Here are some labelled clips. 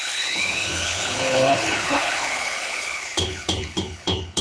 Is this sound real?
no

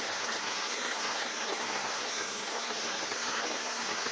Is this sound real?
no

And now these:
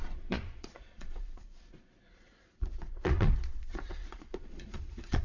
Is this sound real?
no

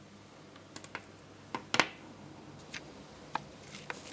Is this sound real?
yes